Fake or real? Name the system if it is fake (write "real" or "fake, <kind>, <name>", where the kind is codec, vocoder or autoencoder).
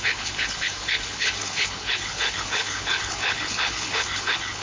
fake, codec, HILCodec